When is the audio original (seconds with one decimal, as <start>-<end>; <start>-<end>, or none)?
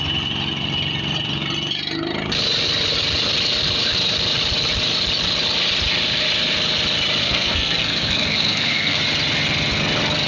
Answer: 0.0-7.2; 9.0-10.3